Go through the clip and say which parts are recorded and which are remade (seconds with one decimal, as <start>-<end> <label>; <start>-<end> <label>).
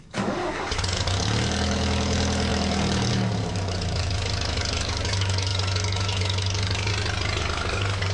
0.0-6.9 remade; 6.9-7.4 recorded; 7.4-8.1 remade